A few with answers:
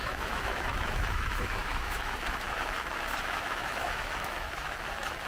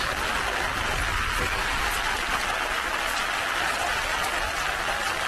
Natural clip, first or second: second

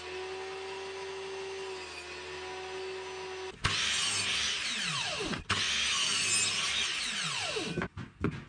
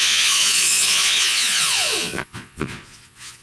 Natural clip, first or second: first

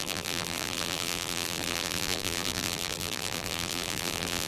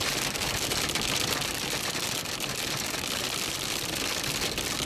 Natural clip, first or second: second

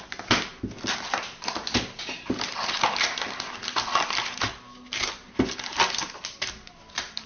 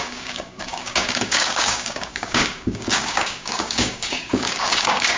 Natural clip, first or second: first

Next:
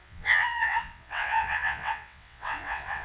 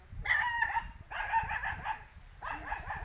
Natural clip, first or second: second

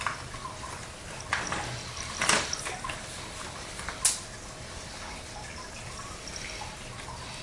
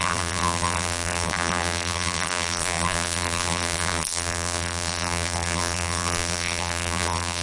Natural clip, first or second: first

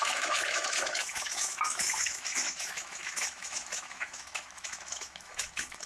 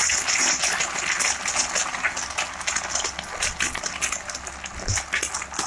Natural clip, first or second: second